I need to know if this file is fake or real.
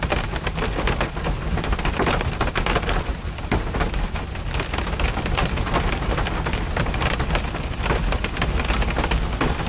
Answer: real